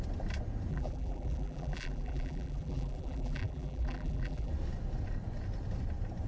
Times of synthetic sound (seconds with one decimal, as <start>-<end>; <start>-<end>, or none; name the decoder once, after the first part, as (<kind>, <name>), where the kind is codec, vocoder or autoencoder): 0.7-4.5 (vocoder, BigVGAN v2)